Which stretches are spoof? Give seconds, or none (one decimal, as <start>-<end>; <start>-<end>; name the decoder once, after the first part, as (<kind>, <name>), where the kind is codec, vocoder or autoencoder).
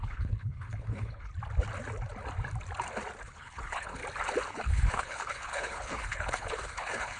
0.0-1.3 (codec, HILCodec); 3.2-4.0; 4.5-7.2